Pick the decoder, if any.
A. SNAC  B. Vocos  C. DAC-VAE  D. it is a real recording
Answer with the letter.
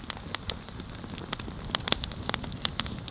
D